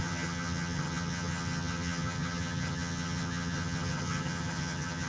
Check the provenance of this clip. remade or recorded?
remade